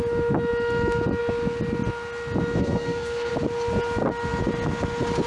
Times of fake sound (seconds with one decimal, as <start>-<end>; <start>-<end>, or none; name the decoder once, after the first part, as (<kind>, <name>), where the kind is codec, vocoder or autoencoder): 2.6-3.3 (codec, SNAC)